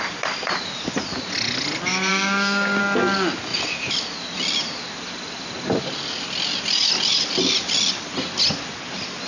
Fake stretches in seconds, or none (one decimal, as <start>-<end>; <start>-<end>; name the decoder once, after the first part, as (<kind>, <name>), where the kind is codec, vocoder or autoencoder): 2.1-2.8 (codec, DAC)